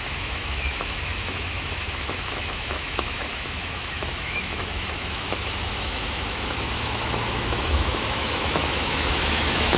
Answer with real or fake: fake